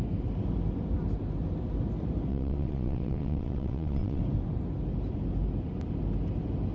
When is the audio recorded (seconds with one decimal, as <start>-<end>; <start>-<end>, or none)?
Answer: 0.0-2.3; 4.2-6.7